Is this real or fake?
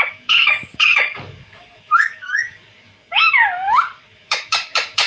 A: fake